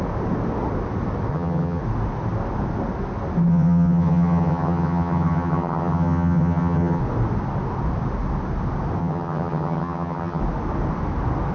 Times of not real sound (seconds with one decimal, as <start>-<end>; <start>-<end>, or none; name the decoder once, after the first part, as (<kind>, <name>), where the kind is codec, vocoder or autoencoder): 1.3-1.8 (vocoder, HiFi-GAN); 3.5-7.0; 9.0-10.4

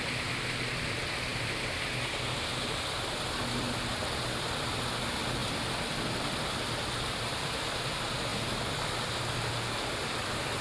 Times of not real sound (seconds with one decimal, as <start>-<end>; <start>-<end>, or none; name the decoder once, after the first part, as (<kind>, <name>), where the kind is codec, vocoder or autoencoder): none

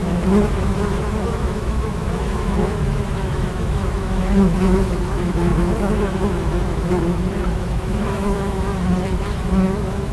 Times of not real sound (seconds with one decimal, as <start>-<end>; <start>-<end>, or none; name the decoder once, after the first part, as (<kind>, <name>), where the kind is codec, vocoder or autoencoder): 0.0-8.7 (autoencoder, DAC-VAE); 9.2-10.1

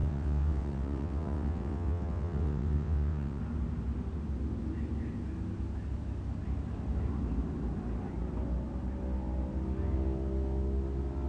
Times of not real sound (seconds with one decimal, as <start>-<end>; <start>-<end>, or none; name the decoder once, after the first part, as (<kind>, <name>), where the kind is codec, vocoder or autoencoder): 0.0-3.4 (vocoder, WaveNeXt)

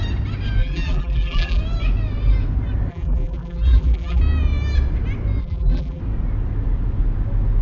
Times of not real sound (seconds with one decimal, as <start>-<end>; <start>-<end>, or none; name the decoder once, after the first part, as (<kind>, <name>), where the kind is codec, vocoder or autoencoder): 0.6-1.6 (vocoder, BigVGAN v2); 2.9-4.2; 5.4-6.0

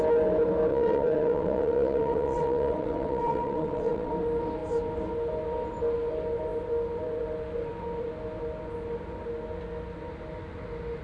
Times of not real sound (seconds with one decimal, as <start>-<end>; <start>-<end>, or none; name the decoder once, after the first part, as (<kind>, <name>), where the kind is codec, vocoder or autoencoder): 0.7-4.1 (vocoder, WaveNeXt)